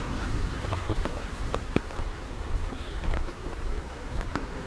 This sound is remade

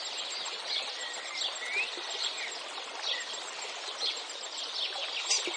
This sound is recorded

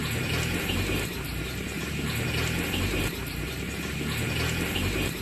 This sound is remade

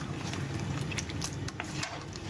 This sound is recorded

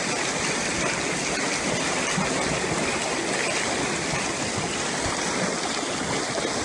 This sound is recorded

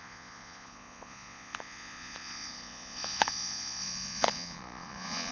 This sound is remade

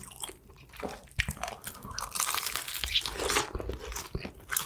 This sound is recorded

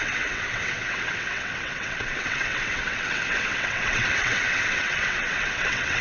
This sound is remade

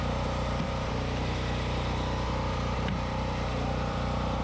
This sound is remade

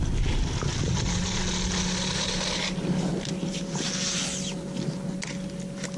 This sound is recorded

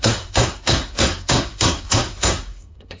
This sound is remade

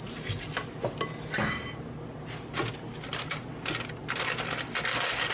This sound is recorded